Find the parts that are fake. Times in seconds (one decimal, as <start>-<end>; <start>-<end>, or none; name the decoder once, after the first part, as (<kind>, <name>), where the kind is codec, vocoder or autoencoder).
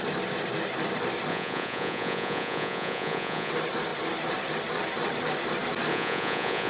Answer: 1.3-3.5 (vocoder, Vocos); 5.9-6.7